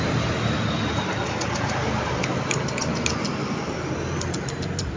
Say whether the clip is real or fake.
real